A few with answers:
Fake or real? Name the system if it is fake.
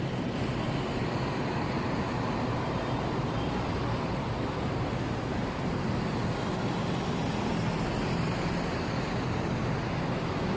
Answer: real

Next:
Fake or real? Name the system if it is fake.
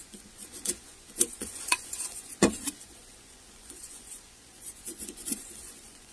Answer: fake, vocoder, Vocos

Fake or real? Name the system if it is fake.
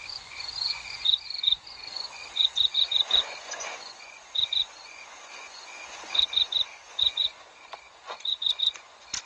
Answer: fake, vocoder, Vocos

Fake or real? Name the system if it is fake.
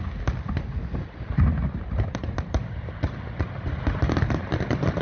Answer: real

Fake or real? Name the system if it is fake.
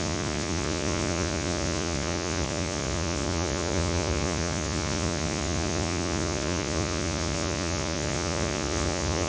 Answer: fake, vocoder, Vocos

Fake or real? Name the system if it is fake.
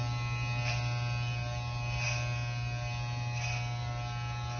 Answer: real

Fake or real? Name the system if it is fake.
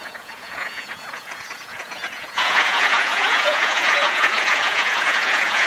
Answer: fake, vocoder, Vocos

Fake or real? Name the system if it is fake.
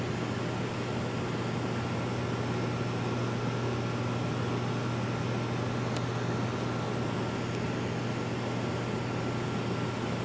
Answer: real